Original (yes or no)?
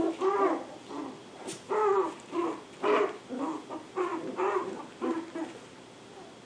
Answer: yes